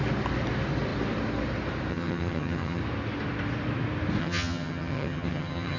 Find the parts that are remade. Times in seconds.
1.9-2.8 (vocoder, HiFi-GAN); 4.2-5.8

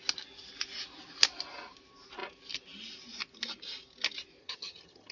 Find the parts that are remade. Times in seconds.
4.4-5.1 (vocoder, HiFi-GAN)

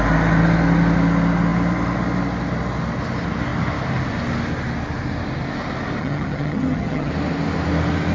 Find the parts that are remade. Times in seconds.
6.0-7.1 (vocoder, HiFi-GAN)

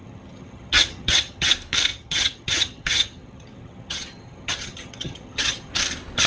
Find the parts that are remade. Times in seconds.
0.0-1.5 (vocoder, HiFi-GAN); 1.9-5.7

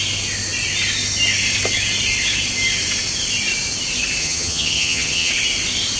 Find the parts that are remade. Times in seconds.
4.2-5.3 (vocoder, HiFi-GAN)

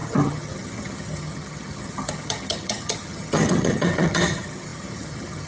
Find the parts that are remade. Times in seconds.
0.0-5.5 (vocoder, HiFi-GAN)

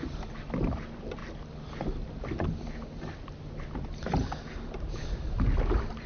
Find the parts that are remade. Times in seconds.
none